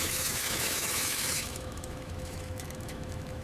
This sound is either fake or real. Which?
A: fake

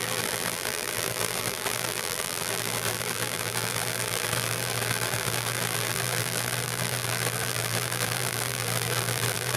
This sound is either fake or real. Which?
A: fake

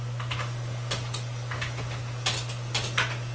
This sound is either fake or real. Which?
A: real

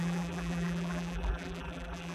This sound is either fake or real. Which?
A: fake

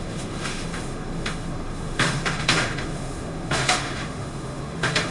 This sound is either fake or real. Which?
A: fake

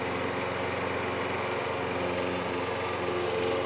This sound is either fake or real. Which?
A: real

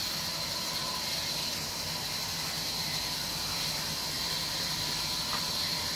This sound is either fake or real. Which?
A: real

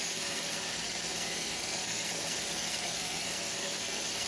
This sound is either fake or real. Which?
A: fake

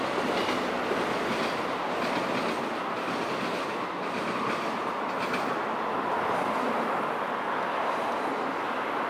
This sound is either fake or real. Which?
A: real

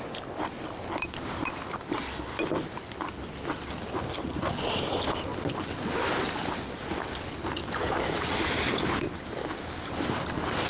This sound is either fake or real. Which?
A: real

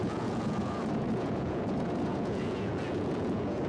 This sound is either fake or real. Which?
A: fake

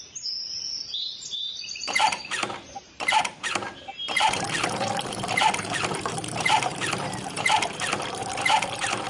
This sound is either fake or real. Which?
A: fake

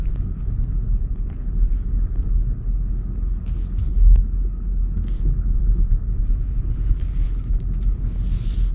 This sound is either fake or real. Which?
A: fake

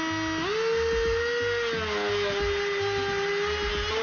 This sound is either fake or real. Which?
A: real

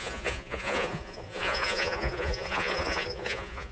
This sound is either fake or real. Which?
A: fake